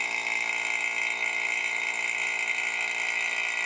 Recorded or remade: recorded